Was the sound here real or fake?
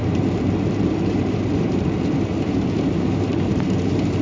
fake